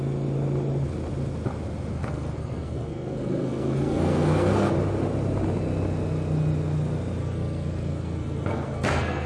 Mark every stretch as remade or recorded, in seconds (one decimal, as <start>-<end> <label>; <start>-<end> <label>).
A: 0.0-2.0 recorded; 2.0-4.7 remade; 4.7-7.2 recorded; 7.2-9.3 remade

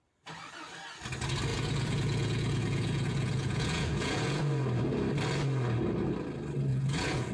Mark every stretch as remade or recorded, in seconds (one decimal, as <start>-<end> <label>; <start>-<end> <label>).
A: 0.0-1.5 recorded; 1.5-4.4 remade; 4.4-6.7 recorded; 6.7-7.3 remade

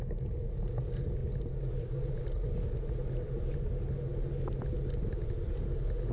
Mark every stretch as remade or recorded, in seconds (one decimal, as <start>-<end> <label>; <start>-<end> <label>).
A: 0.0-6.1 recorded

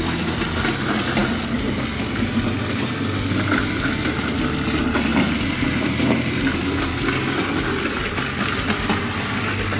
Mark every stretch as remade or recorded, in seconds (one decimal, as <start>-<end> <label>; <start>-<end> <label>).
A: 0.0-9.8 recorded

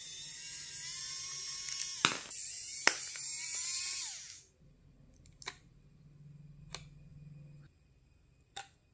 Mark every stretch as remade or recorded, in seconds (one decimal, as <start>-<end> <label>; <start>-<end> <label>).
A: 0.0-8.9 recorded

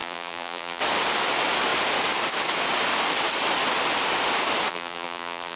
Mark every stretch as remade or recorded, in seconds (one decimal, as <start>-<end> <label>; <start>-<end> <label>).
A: 0.0-0.8 remade; 0.8-4.7 recorded; 4.7-5.6 remade

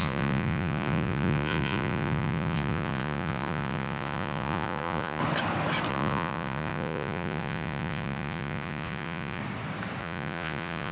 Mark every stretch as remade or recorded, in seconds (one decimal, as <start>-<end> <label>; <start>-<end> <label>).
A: 0.0-5.2 remade; 5.2-5.9 recorded; 5.9-9.4 remade; 9.4-10.0 recorded; 10.0-10.9 remade

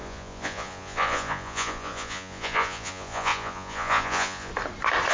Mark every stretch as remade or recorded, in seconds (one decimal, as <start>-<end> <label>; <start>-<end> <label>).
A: 0.0-4.5 remade; 4.5-5.1 recorded